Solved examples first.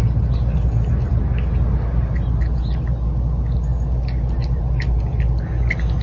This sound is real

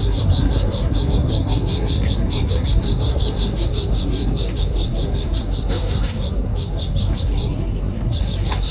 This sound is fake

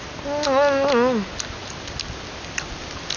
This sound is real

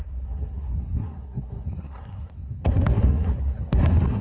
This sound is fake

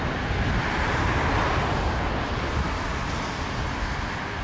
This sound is real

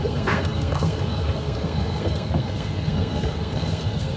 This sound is fake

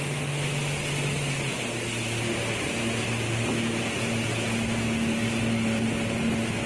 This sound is real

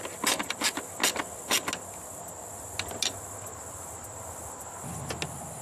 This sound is real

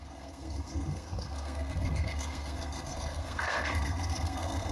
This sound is fake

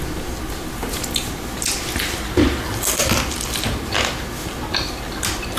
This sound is real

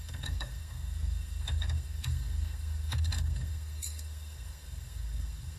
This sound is fake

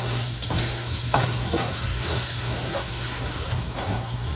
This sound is fake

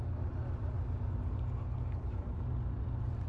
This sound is real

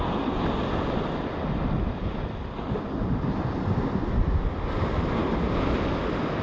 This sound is real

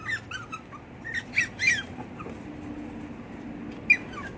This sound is real